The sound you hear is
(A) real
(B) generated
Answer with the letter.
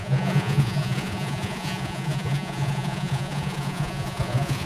B